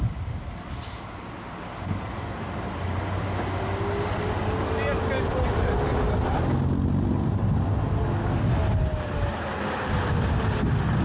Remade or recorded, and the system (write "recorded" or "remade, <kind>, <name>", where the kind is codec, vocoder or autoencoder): recorded